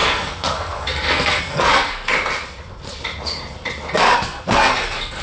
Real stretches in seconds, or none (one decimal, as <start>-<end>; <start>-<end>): 2.1-3.9